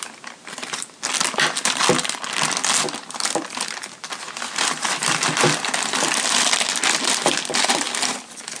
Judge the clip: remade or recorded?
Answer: recorded